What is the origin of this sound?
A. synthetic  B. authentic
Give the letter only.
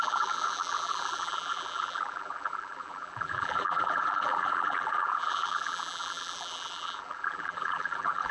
A